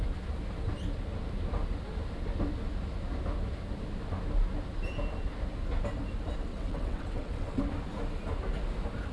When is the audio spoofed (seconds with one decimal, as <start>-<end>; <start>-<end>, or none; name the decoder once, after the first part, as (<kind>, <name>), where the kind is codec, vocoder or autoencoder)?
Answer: 6.5-7.6 (vocoder, WaveNeXt)